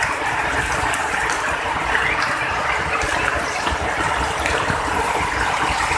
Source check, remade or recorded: recorded